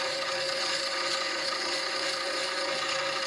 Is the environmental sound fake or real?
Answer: fake